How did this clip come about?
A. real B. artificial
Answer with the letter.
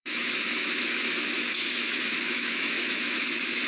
B